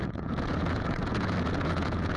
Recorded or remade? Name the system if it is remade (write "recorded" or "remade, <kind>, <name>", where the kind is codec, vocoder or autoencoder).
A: remade, vocoder, Vocos